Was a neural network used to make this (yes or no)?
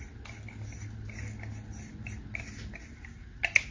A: no